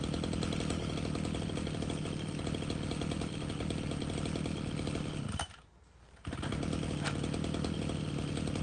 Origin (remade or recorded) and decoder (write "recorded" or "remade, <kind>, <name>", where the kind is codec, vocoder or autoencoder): recorded